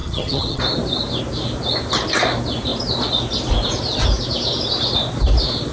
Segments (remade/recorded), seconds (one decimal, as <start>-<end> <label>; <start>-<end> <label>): 0.0-0.6 remade; 0.6-5.7 recorded